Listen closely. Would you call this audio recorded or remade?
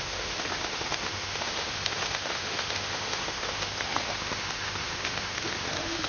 remade